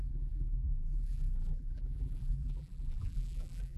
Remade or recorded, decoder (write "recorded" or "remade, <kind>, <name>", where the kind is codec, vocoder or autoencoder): remade, vocoder, BigVGAN v2